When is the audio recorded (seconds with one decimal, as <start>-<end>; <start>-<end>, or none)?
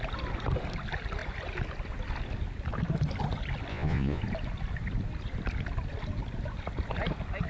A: 0.0-3.7; 4.2-7.5